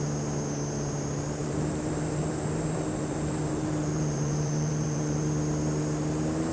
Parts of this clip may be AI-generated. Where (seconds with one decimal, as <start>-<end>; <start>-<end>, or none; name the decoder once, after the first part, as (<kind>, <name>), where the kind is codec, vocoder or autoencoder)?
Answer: 1.4-5.3 (vocoder, BigVGAN v2)